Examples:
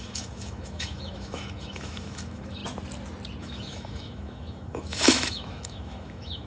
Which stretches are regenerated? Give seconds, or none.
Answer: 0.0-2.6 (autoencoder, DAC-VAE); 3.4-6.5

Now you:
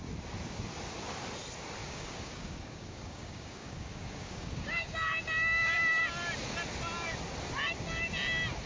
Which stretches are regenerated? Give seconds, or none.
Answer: 1.8-5.3 (codec, DAC)

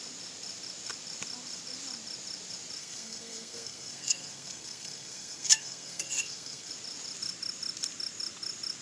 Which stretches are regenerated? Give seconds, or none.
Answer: 2.8-6.7 (codec, SNAC)

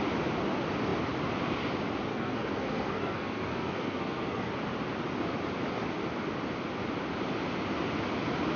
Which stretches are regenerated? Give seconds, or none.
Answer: 2.1-4.5 (codec, SNAC)

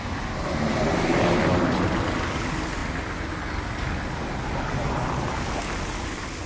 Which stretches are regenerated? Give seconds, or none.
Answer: none